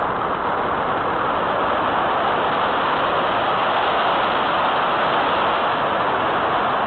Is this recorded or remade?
recorded